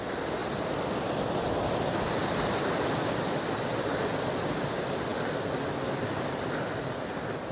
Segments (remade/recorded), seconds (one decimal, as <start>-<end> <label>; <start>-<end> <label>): 0.0-7.5 recorded